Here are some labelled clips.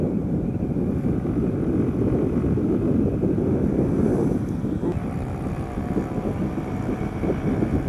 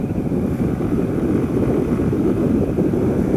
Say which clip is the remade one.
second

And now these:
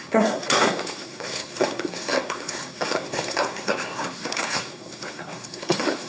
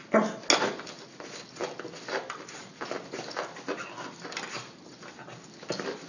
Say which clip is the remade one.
first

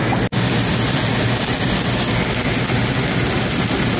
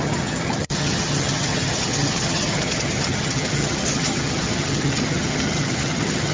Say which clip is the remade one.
second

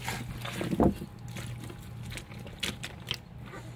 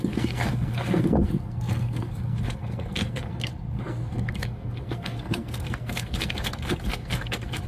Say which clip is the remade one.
second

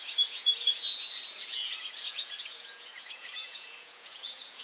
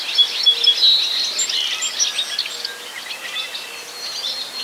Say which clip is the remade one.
first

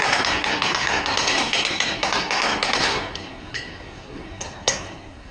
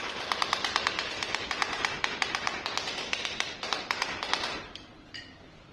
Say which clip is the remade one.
first